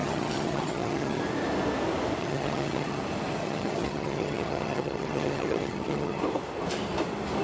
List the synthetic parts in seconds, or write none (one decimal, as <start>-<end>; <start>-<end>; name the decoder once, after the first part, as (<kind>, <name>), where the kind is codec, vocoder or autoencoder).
0.0-1.2 (vocoder, HiFi-GAN); 2.2-3.0; 3.4-6.2